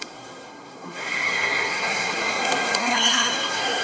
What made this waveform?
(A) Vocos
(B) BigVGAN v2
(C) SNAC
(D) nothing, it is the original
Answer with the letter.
C